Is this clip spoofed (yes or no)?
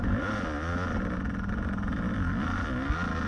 no